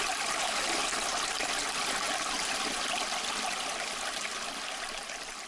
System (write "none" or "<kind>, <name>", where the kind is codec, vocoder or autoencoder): none